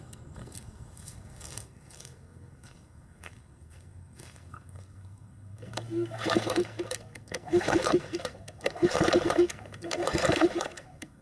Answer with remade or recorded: remade